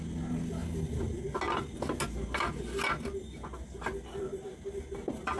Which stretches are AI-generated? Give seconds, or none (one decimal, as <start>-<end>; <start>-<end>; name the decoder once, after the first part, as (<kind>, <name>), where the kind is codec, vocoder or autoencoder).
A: none